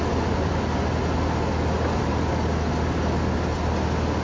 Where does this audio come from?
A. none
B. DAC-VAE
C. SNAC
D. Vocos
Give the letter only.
A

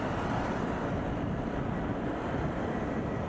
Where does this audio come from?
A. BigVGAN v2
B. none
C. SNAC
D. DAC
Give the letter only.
B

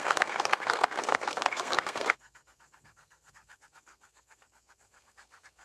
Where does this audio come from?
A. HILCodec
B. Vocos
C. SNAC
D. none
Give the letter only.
C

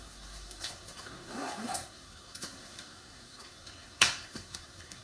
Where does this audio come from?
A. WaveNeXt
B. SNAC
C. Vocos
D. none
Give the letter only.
B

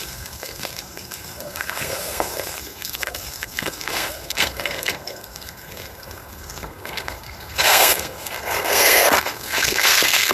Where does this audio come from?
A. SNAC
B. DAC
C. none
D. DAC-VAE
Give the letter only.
A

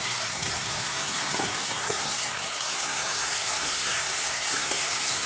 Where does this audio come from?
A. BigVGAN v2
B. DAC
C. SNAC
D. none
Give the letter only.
C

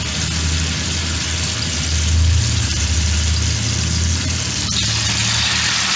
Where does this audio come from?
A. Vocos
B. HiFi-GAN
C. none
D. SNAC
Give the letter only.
C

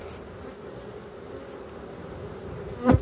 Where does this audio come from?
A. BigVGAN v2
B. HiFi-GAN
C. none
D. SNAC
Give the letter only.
C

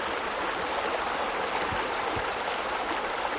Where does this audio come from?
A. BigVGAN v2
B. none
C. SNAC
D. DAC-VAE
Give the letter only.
B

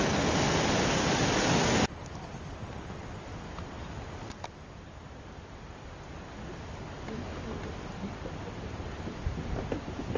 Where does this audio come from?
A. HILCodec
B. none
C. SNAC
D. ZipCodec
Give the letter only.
B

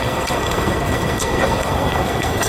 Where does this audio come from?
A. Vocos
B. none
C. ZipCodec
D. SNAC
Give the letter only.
D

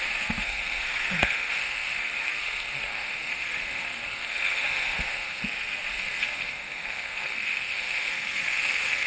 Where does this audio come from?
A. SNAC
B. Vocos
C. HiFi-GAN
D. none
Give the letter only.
A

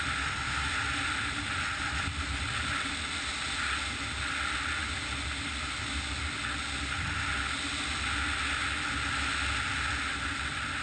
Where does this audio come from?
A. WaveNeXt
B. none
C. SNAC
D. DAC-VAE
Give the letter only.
B